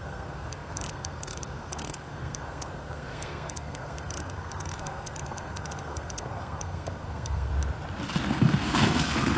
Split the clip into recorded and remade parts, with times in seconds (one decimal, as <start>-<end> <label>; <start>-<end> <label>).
0.0-7.5 remade; 7.5-8.3 recorded; 8.3-9.4 remade